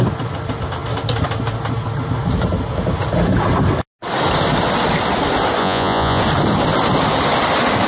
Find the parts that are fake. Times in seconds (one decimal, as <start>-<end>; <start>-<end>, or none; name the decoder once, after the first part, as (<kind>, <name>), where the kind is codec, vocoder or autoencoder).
5.6-6.2 (vocoder, Vocos)